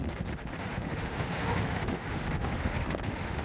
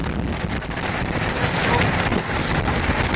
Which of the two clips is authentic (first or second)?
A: second